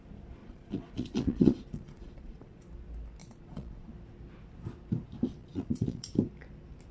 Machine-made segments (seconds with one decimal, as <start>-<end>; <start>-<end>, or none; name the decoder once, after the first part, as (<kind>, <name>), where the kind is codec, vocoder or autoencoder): 0.4-2.6 (vocoder, Vocos); 3.2-3.9; 5.4-6.1